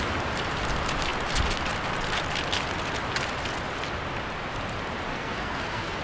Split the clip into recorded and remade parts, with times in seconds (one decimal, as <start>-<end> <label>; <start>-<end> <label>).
0.0-5.1 recorded; 5.1-6.0 remade